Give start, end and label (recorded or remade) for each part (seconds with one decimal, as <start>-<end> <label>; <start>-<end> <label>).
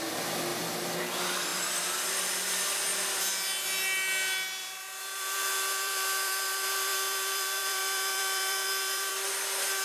0.0-1.5 recorded; 1.5-2.0 remade; 2.0-4.6 recorded; 4.6-9.3 remade; 9.3-9.8 recorded